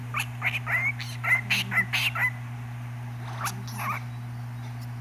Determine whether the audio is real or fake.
real